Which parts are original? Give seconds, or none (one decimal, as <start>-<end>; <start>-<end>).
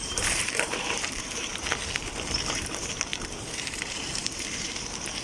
1.5-2.4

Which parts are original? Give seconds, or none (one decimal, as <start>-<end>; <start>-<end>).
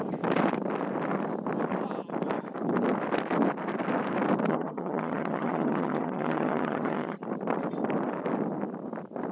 0.0-4.5; 7.2-9.3